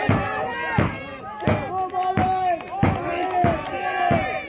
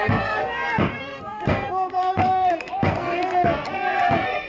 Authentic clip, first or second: first